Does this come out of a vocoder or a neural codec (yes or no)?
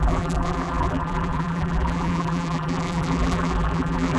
yes